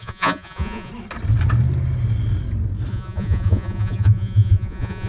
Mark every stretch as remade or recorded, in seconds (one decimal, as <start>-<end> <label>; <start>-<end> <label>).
0.0-0.9 remade; 0.9-2.9 recorded; 2.9-5.1 remade